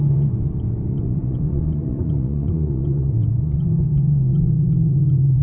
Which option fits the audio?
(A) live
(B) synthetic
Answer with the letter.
B